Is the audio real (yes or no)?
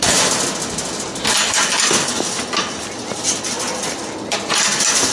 yes